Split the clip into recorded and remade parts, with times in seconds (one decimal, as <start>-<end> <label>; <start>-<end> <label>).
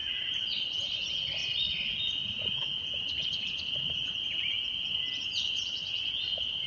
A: 0.0-6.7 recorded